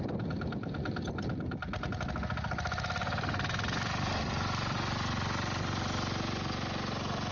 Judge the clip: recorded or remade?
recorded